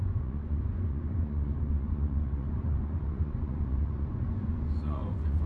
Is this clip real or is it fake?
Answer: fake